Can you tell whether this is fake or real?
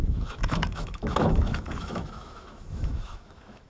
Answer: fake